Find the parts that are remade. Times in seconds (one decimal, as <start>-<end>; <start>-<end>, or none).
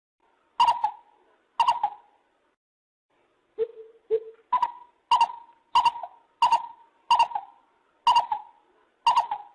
none